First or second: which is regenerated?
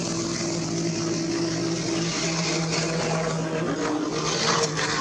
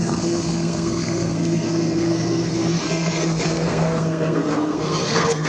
second